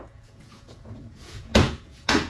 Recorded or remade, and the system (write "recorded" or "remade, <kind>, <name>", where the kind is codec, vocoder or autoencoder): remade, vocoder, Vocos